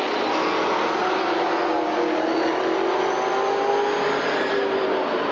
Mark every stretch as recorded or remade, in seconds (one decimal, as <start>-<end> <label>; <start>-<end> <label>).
0.0-5.3 recorded